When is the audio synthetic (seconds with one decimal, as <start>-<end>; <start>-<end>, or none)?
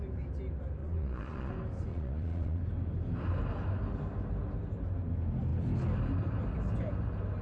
0.8-1.5; 1.9-2.6